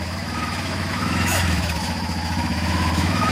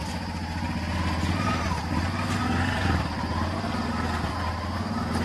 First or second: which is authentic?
second